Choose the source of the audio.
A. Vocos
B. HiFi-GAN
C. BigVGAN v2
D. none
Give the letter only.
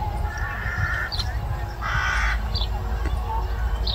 D